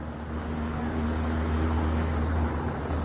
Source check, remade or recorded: recorded